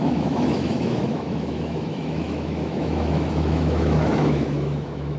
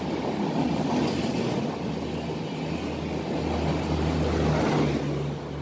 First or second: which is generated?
first